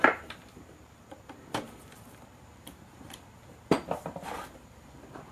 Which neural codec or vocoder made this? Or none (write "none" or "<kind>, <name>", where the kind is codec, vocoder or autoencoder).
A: vocoder, BigVGAN v2